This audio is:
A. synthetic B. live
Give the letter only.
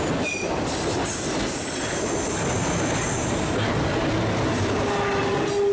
B